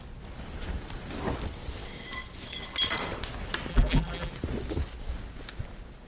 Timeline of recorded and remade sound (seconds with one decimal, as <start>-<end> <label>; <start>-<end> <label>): 0.0-3.7 recorded; 3.7-4.3 remade; 4.3-6.1 recorded

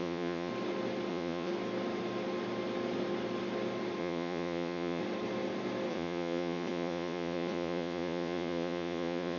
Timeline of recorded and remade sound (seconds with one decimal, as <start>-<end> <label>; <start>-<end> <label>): 0.0-0.5 remade; 0.5-1.1 recorded; 1.1-1.5 remade; 1.5-4.0 recorded; 4.0-5.0 remade; 5.0-5.9 recorded; 5.9-9.4 remade